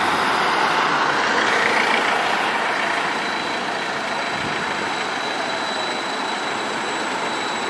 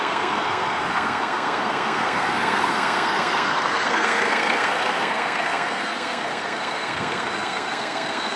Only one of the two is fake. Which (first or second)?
second